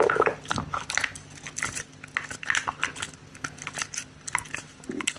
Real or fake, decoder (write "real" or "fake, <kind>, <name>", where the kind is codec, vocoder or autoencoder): real